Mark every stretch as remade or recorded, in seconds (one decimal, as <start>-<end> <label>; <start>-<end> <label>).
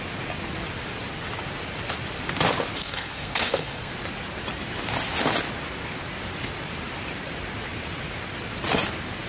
0.0-2.8 recorded; 2.8-3.9 remade; 3.9-9.3 recorded